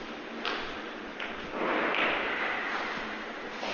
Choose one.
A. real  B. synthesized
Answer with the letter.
A